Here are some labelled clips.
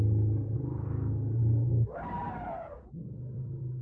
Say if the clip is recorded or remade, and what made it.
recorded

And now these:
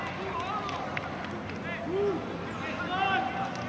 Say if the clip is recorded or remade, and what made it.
recorded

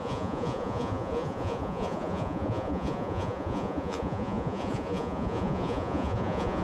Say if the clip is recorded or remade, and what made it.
remade, vocoder, Vocos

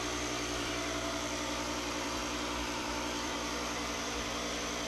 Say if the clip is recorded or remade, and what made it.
remade, vocoder, BigVGAN v2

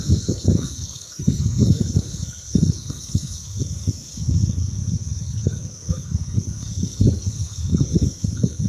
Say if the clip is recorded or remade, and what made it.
remade, codec, SNAC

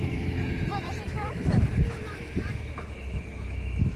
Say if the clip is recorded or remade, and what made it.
remade, autoencoder, DAC-VAE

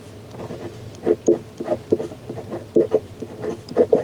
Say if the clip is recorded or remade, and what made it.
recorded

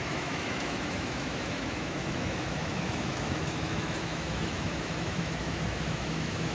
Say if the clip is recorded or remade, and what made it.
remade, autoencoder, DAC-VAE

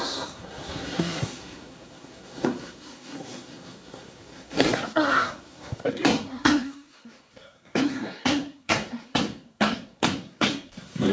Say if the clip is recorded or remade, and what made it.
remade, codec, SNAC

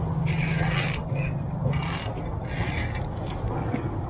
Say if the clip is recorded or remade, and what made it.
recorded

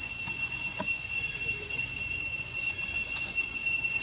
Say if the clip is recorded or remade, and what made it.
remade, vocoder, Vocos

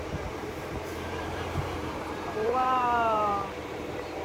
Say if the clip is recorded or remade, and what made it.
remade, vocoder, BigVGAN v2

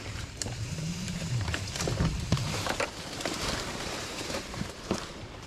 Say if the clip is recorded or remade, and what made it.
remade, vocoder, BigVGAN v2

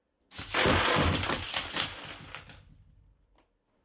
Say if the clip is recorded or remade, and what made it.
recorded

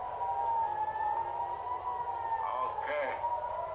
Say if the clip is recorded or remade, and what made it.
recorded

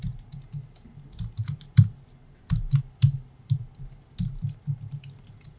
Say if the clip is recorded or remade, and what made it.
recorded